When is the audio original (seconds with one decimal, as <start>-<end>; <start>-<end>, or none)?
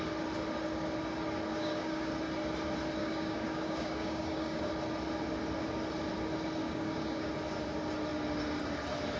0.0-1.5; 2.1-3.0; 4.7-6.6; 7.3-9.2